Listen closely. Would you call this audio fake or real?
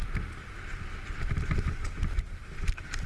real